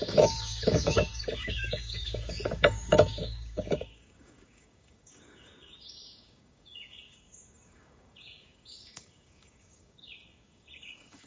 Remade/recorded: remade